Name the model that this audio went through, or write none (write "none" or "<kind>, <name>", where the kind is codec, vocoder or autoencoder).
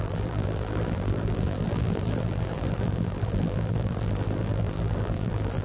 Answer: vocoder, BigVGAN v2